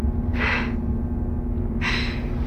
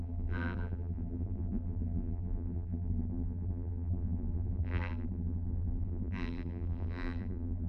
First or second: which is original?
first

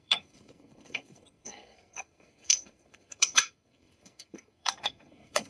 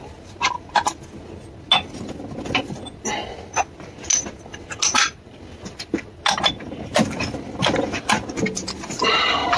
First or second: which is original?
second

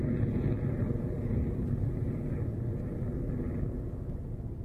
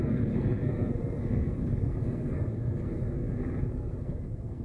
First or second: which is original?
first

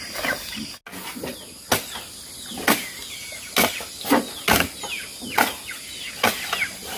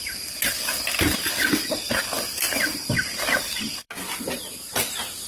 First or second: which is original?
first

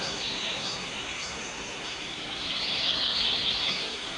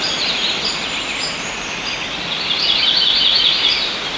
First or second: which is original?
second